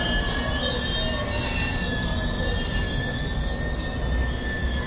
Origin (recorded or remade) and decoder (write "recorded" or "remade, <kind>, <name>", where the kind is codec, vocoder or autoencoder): recorded